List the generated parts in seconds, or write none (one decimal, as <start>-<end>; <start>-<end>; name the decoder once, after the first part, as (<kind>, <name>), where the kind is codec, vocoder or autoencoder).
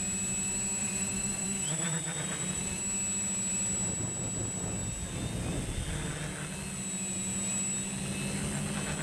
0.8-2.8 (vocoder, BigVGAN v2)